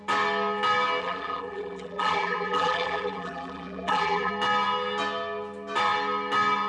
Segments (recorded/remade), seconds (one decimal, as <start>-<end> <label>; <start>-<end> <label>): 0.0-1.0 recorded; 1.0-4.3 remade; 4.3-6.7 recorded